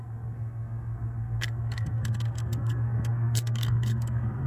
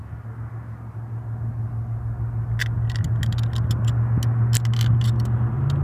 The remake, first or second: first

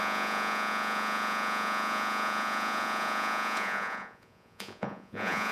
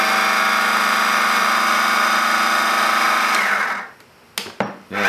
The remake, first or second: first